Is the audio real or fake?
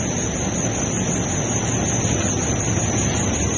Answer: real